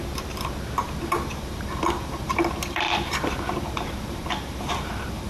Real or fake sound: fake